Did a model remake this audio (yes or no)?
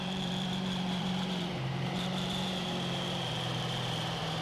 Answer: yes